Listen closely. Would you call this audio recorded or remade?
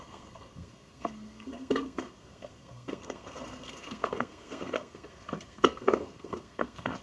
remade